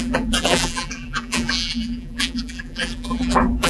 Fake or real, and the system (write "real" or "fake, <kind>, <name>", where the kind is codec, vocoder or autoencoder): fake, vocoder, BigVGAN v2